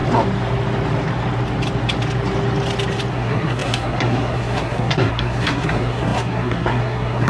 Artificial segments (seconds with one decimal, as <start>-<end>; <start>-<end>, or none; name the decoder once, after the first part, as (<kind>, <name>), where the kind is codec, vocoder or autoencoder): 3.1-7.3 (codec, SNAC)